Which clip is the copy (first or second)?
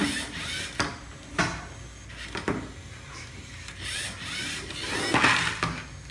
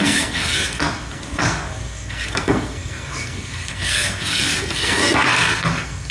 second